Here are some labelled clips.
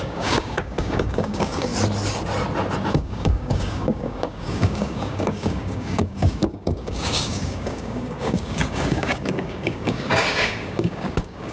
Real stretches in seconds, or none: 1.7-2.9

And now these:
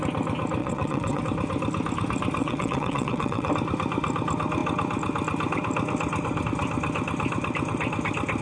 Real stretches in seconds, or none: 0.0-0.6; 1.2-2.4; 3.5-8.4

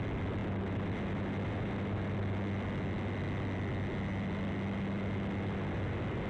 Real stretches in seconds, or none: 0.0-6.3